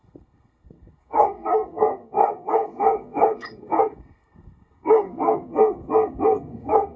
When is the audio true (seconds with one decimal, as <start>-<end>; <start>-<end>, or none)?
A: none